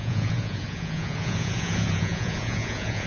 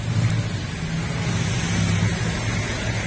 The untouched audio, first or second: second